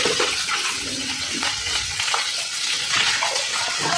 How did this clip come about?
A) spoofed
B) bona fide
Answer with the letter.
A